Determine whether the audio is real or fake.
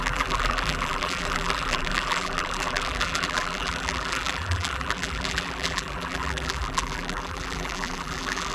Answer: fake